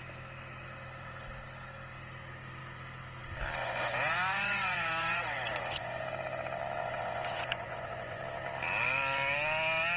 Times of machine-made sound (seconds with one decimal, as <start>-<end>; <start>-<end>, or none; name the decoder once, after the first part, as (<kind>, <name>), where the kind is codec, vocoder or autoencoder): 3.6-6.0 (vocoder, Vocos); 6.8-8.2